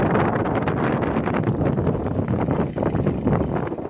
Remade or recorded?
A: recorded